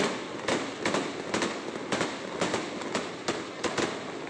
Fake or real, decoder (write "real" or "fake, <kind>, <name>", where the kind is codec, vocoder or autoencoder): real